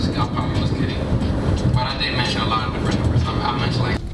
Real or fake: real